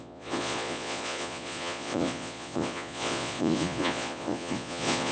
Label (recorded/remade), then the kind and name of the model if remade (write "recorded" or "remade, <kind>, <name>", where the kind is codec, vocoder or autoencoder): remade, vocoder, Vocos